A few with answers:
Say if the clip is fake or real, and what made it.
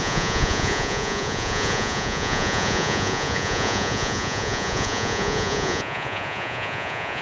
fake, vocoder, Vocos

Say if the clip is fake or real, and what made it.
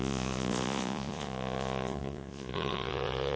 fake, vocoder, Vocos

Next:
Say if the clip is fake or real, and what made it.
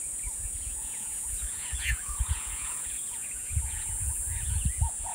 fake, vocoder, Vocos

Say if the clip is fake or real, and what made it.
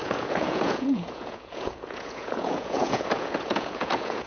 fake, vocoder, Vocos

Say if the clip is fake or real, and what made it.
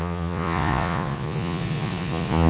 fake, vocoder, Vocos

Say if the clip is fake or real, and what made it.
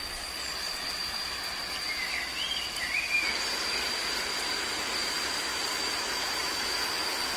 real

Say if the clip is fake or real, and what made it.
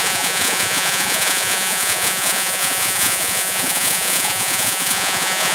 fake, vocoder, Vocos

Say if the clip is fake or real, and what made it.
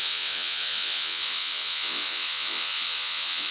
fake, vocoder, Vocos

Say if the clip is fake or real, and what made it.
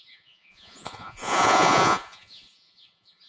fake, vocoder, Vocos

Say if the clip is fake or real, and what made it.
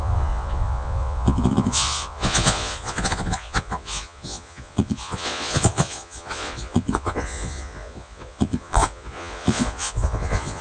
fake, vocoder, Vocos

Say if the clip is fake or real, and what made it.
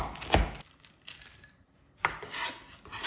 real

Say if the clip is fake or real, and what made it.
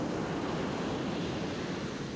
real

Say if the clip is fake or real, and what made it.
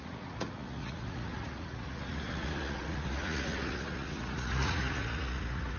fake, vocoder, Vocos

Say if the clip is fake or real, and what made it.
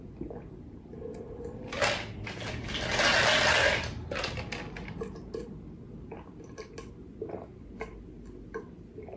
real